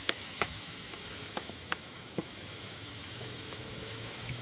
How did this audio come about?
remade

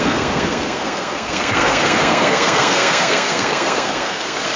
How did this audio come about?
remade